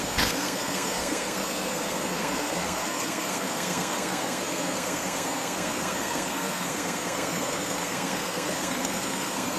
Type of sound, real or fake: fake